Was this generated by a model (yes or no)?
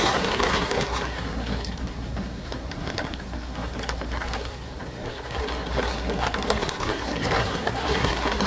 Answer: yes